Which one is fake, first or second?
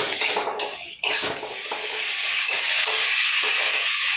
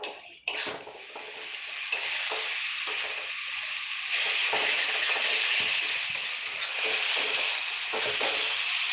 first